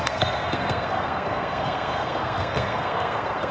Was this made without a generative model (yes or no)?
no